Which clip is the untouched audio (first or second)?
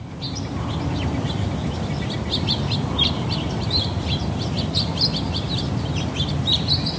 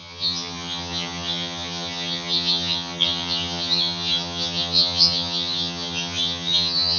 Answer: first